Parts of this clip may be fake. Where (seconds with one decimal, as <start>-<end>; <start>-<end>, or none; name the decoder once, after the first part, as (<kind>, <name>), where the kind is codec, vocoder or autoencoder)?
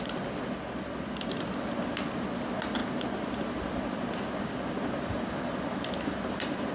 none